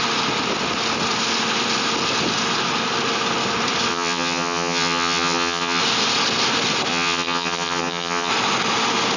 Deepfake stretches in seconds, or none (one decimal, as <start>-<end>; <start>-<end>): 3.9-5.8; 6.9-8.3